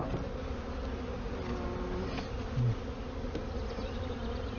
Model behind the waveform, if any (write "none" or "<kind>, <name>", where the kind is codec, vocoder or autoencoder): none